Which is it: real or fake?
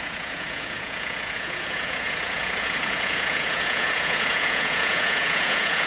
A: fake